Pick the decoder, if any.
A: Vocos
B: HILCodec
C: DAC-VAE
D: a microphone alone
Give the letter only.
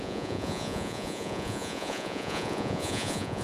A